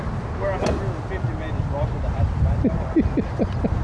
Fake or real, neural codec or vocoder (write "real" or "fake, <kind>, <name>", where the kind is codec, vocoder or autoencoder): real